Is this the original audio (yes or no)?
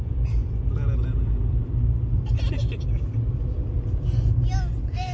yes